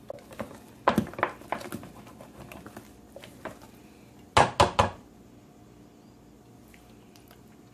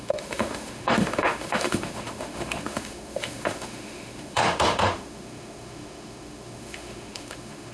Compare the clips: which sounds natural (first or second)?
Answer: first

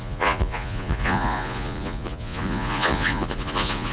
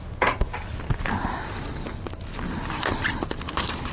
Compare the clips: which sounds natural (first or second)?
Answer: second